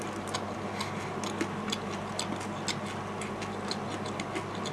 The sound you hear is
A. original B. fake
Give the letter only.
A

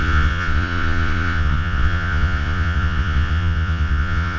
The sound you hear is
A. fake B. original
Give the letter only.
A